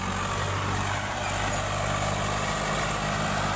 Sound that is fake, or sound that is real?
real